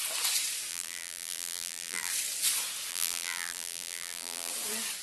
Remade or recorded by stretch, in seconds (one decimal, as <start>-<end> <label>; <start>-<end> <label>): 0.0-0.7 recorded; 0.7-2.1 remade; 2.1-2.9 recorded; 2.9-4.5 remade; 4.5-5.0 recorded